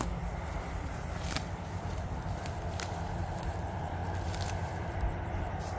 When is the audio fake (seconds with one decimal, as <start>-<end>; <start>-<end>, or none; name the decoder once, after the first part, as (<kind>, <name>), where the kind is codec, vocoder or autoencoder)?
0.0-4.0 (vocoder, BigVGAN v2); 4.6-5.8